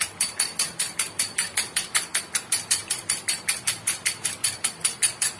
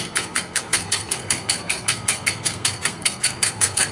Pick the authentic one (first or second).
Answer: first